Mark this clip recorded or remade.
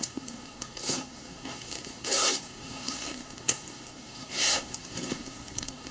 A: remade